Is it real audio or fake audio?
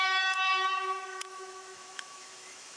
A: fake